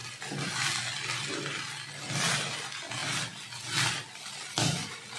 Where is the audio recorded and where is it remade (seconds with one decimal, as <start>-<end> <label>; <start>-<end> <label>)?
0.0-5.2 recorded